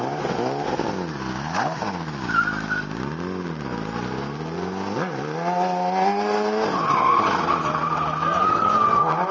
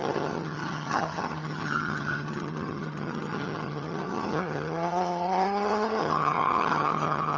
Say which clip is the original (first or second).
first